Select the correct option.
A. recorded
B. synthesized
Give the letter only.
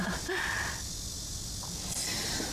A